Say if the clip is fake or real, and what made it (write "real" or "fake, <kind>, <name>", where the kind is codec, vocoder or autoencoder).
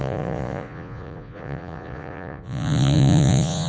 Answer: fake, vocoder, Vocos